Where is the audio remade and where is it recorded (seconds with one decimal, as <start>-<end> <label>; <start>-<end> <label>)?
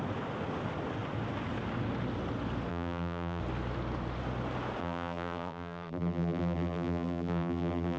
0.0-2.7 recorded; 2.7-3.4 remade; 3.4-4.8 recorded; 4.8-8.0 remade